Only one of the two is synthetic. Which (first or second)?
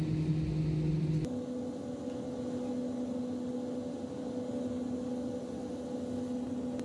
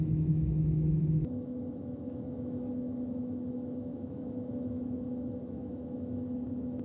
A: second